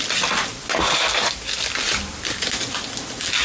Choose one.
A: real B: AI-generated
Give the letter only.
A